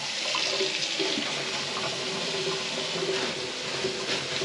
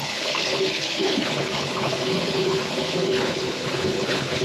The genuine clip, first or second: first